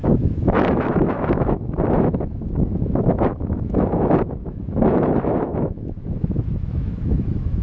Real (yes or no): no